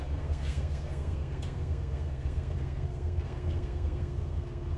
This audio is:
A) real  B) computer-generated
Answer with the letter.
B